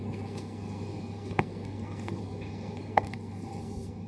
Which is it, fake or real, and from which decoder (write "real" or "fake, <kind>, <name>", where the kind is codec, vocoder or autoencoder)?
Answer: fake, codec, SNAC